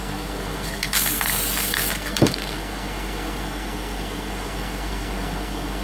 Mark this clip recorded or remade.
remade